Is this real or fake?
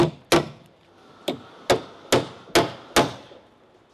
real